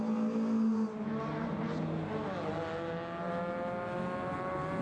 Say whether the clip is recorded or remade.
recorded